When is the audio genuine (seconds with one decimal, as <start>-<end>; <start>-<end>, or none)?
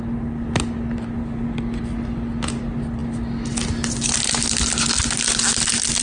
0.0-6.0